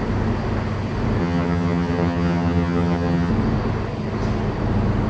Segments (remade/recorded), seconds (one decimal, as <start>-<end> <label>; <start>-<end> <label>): 0.0-1.2 recorded; 1.2-3.3 remade; 3.3-5.1 recorded